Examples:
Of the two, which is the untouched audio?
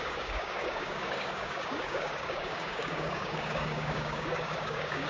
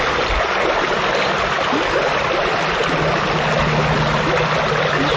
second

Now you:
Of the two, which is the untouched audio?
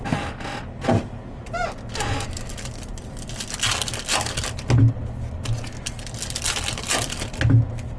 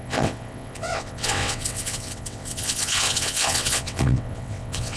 first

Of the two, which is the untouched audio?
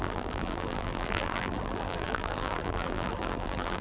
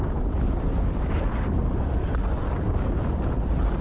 second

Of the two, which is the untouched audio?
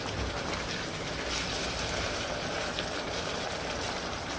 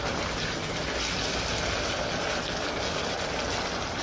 second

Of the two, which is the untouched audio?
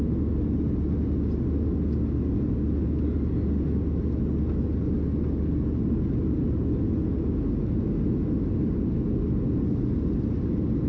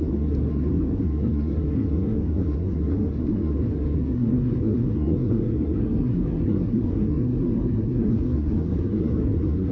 first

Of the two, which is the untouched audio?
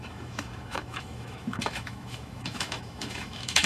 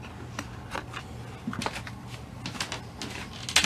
second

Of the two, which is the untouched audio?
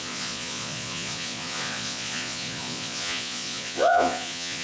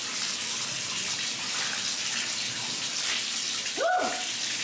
second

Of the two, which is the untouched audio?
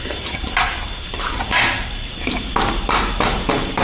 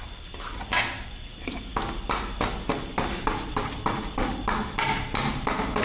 second